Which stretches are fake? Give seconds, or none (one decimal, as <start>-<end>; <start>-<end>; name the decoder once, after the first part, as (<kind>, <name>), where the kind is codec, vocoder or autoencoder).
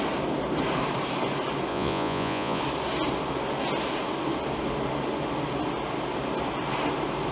1.7-2.6 (vocoder, Vocos)